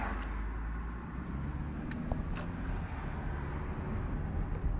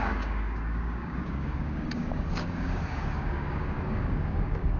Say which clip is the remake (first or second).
second